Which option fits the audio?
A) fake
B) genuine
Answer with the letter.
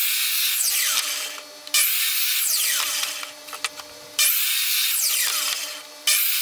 B